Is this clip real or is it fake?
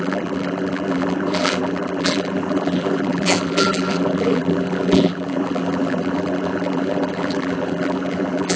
fake